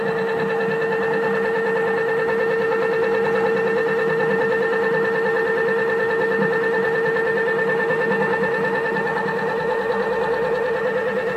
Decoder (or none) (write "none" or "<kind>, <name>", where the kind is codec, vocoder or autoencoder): none